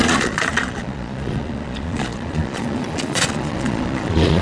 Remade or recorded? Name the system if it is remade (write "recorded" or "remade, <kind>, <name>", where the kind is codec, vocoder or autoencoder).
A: remade, vocoder, Vocos